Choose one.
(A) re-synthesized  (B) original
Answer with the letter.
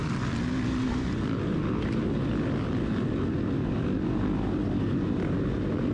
B